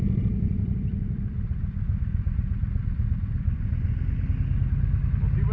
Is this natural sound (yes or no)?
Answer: yes